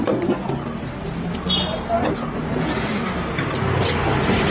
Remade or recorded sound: recorded